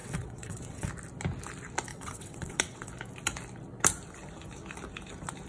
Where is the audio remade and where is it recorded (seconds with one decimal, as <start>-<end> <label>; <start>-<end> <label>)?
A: 0.0-0.9 remade; 0.9-1.9 recorded; 1.9-2.9 remade; 2.9-5.5 recorded